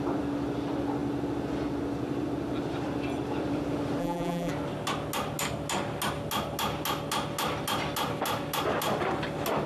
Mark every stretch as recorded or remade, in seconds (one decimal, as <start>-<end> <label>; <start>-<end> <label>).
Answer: 0.0-4.0 recorded; 4.0-4.5 remade; 4.5-9.7 recorded